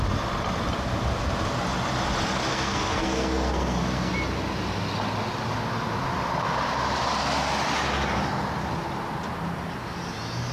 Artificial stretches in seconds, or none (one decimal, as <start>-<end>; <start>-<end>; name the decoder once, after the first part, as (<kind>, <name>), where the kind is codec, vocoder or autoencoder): 2.5-4.1 (codec, SNAC)

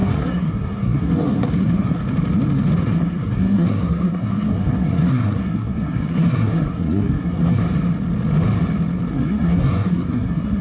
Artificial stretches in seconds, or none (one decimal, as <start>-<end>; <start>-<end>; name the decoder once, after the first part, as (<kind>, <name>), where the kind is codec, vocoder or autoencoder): 0.0-2.0 (codec, SNAC); 2.8-7.6; 9.1-10.6